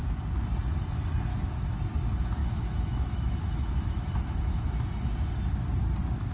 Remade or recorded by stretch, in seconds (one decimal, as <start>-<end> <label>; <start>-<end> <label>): 0.0-1.3 recorded; 1.3-1.8 remade; 1.8-2.4 recorded; 2.4-4.6 remade; 4.6-6.3 recorded